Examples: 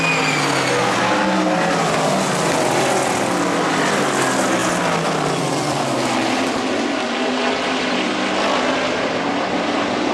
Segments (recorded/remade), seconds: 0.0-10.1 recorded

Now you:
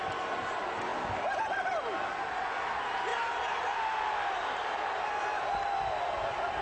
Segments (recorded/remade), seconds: 0.0-6.6 recorded

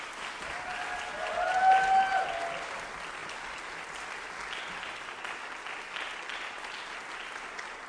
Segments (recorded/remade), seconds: 0.0-7.9 recorded

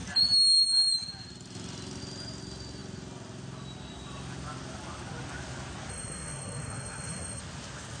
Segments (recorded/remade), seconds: 0.0-5.9 recorded; 5.9-7.4 remade; 7.4-8.0 recorded

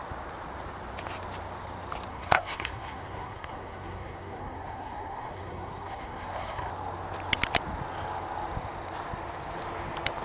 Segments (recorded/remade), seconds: 0.0-2.1 recorded; 2.1-6.7 remade; 6.7-10.2 recorded

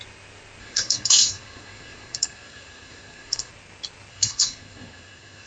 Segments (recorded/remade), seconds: 0.0-0.6 recorded; 0.6-3.5 remade; 3.5-4.1 recorded; 4.1-5.5 remade